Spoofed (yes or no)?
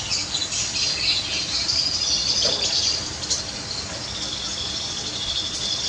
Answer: no